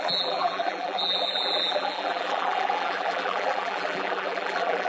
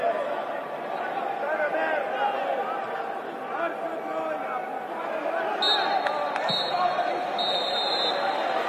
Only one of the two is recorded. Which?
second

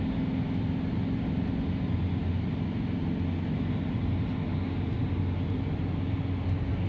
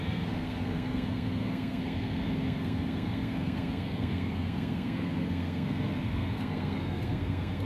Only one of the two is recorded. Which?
first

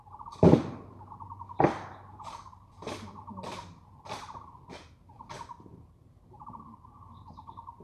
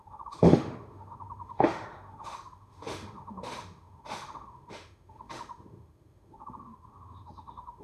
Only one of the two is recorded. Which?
first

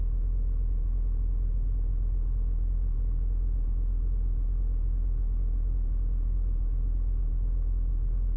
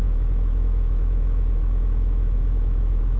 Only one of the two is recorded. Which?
first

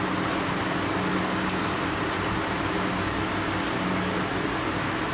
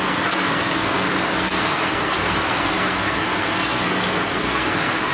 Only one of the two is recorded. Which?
first